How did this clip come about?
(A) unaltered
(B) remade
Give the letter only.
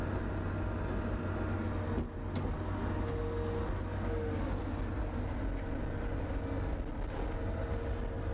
A